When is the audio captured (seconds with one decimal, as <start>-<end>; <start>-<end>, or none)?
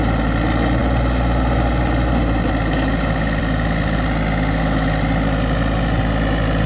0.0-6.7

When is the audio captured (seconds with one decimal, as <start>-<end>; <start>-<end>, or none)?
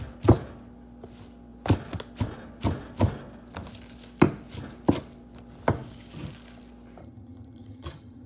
0.0-7.0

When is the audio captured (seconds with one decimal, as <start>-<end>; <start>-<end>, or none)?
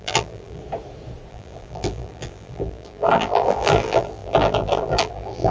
0.6-1.3